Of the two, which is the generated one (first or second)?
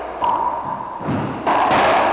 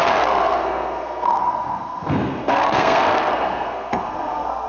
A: second